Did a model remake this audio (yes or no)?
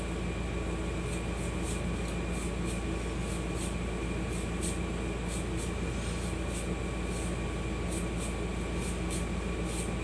no